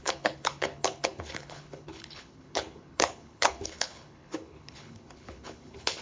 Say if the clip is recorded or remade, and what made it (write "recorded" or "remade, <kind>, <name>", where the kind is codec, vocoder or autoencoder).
remade, codec, HILCodec